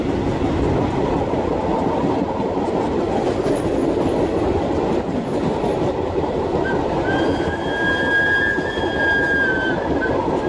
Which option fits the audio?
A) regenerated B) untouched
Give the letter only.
B